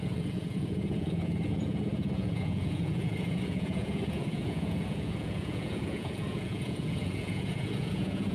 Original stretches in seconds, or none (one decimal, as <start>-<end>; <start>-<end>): none